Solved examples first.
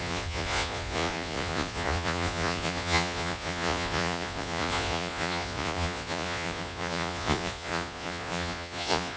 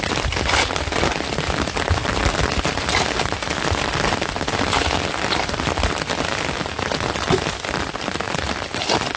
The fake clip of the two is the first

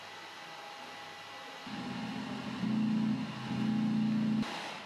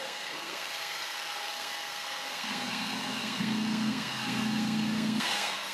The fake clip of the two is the second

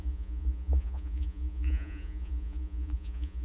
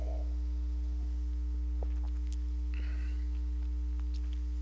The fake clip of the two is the first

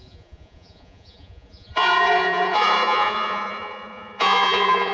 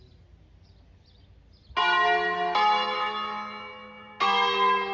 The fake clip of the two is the first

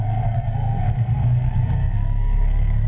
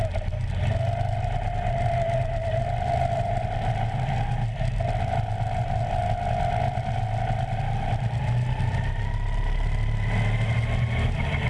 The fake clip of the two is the first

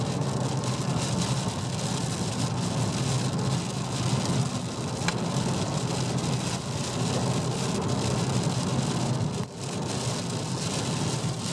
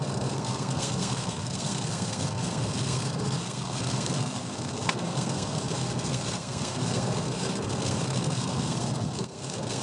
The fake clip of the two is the second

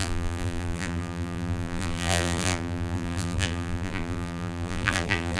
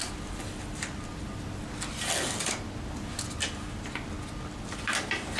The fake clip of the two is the first